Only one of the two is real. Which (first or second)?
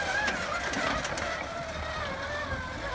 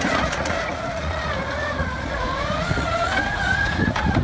first